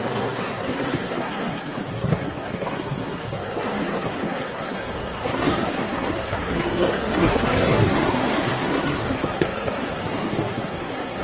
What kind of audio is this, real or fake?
fake